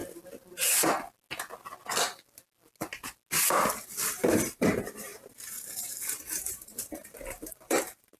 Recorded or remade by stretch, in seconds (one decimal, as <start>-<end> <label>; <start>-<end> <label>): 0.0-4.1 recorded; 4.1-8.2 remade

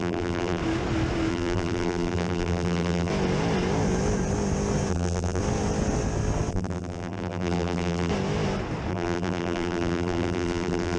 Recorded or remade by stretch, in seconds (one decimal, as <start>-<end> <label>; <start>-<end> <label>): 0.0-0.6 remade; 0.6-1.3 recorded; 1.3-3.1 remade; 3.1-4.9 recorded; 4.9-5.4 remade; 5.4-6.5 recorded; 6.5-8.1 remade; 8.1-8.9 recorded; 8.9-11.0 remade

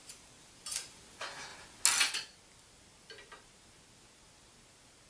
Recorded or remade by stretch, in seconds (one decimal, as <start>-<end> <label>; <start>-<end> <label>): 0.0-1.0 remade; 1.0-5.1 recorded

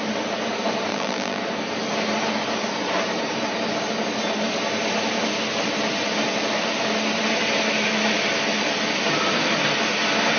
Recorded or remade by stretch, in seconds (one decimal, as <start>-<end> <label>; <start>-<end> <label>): 0.0-0.9 recorded; 0.9-1.4 remade; 1.4-10.4 recorded

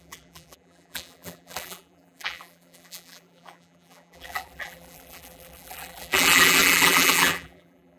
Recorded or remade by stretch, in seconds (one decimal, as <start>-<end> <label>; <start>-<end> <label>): 0.0-8.0 remade

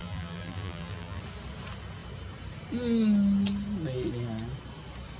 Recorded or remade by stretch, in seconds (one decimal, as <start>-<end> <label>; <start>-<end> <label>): 0.0-1.2 remade; 1.2-5.2 recorded